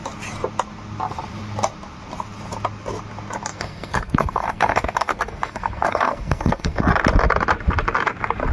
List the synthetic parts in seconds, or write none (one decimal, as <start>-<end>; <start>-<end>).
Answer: 3.5-6.8